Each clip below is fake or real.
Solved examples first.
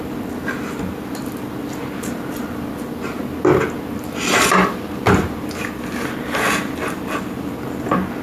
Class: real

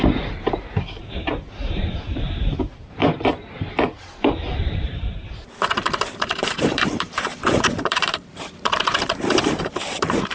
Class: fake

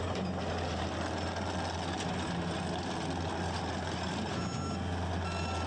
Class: real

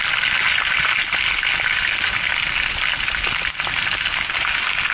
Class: real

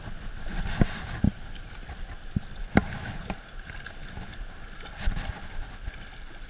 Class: real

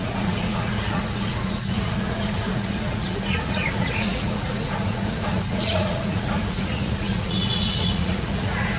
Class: fake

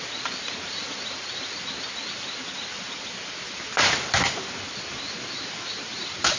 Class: real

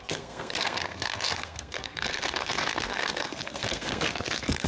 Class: fake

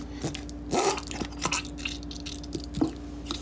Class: real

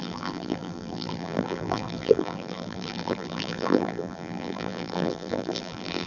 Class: fake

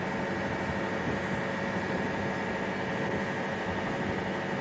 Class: real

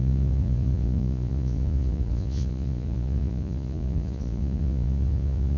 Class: fake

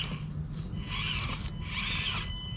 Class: real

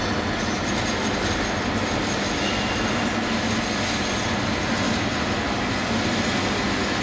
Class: real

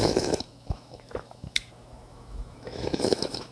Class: fake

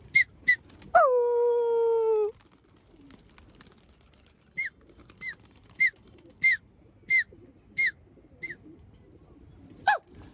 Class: real